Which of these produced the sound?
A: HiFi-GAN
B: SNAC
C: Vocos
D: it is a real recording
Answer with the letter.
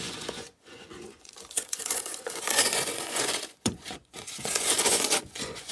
C